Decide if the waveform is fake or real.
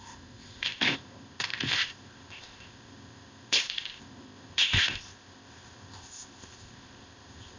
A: fake